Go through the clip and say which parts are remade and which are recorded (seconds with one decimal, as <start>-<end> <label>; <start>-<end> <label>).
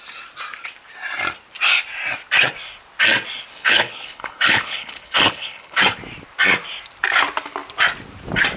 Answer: 0.0-3.5 recorded; 3.5-5.8 remade; 5.8-8.6 recorded